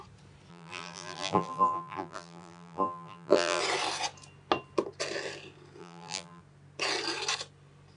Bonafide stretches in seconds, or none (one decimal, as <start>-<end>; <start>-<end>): 0.0-0.5; 3.6-5.8; 6.4-8.0